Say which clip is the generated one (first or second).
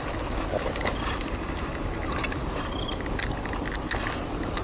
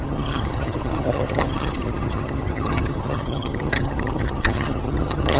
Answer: second